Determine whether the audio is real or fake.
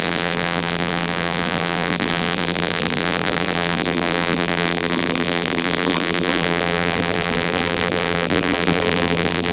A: fake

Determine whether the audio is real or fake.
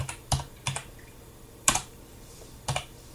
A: fake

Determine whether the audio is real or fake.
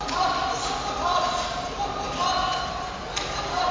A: real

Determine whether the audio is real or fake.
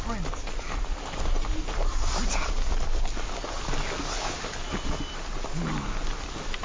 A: real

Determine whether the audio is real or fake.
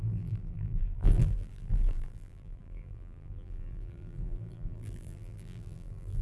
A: fake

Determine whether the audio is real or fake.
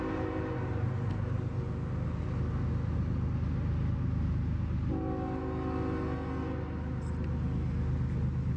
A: real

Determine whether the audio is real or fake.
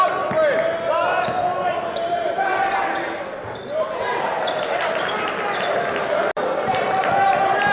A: real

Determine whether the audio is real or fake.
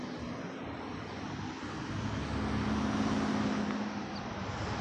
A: real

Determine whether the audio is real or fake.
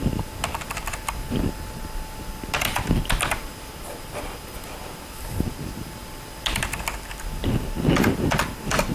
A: real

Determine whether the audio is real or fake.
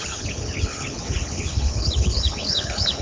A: fake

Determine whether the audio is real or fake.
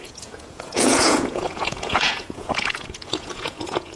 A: fake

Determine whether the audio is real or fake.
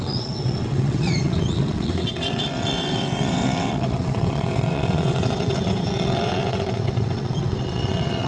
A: fake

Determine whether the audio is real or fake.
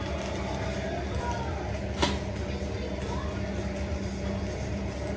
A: real